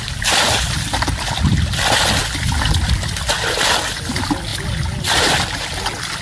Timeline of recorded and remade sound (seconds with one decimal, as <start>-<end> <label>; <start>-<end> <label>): 0.0-6.2 recorded